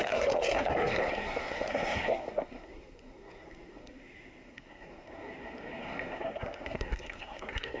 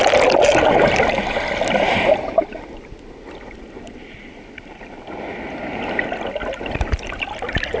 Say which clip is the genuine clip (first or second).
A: second